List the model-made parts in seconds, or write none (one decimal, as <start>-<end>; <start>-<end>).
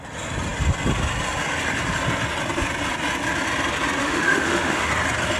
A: 4.0-4.9